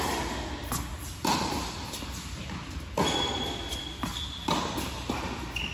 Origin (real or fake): real